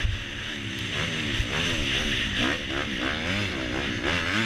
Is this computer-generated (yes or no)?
no